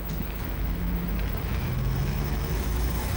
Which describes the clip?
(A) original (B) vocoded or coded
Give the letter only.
B